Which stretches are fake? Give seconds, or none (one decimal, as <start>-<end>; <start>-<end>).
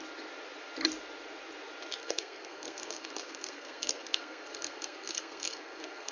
2.0-6.1